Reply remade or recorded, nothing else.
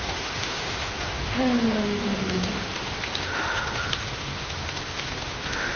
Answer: remade